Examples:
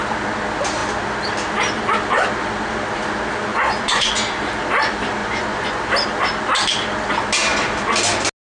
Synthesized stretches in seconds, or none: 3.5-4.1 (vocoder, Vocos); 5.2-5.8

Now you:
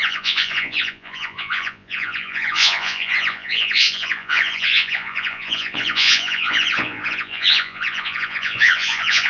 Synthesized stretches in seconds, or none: 0.0-9.3 (vocoder, Vocos)

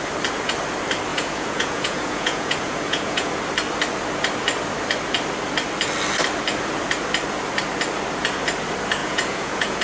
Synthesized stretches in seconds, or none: 1.1-3.3 (vocoder, Vocos); 9.0-9.8

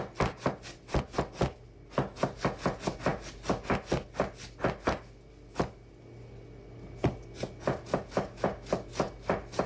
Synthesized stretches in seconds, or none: none

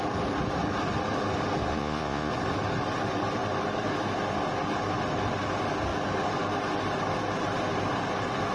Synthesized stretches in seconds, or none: 1.7-2.3 (vocoder, Vocos)